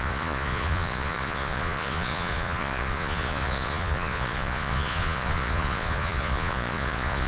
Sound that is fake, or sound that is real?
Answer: fake